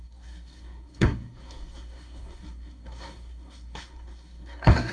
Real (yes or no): no